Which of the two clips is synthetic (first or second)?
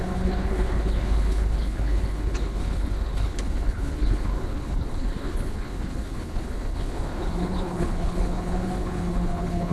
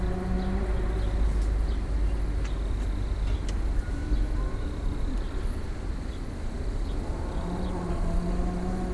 first